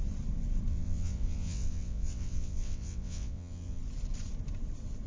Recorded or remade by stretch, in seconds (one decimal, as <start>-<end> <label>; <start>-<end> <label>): 0.0-0.7 recorded; 0.7-3.8 remade; 3.8-5.1 recorded